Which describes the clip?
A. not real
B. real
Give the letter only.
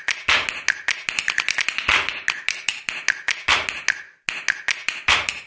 B